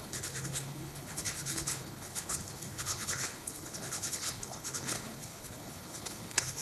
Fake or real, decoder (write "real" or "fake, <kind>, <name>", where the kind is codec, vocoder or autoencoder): fake, codec, HILCodec